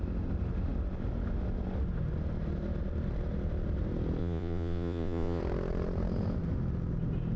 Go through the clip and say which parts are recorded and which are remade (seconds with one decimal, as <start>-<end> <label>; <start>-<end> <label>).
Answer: 0.0-4.2 recorded; 4.2-5.4 remade; 5.4-7.4 recorded